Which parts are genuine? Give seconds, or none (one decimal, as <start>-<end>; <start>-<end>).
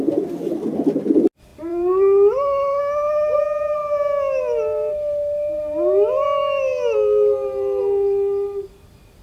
0.0-1.5; 2.8-9.2